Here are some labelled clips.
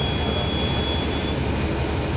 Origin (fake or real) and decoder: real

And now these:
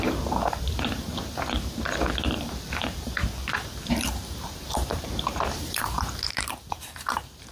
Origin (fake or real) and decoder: fake, vocoder, BigVGAN v2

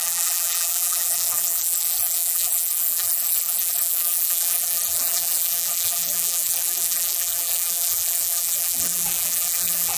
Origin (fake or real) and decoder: fake, vocoder, BigVGAN v2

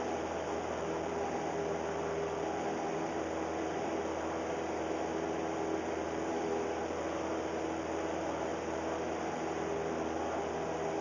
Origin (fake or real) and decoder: real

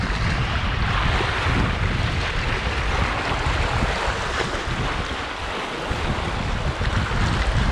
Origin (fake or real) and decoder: real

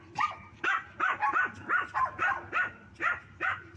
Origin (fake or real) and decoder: fake, vocoder, BigVGAN v2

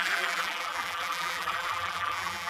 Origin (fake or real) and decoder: fake, vocoder, BigVGAN v2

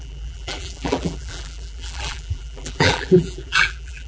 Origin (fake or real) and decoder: fake, vocoder, BigVGAN v2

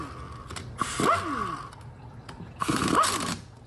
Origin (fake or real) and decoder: real